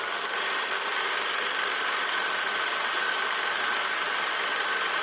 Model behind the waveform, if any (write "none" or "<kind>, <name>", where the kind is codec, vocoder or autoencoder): none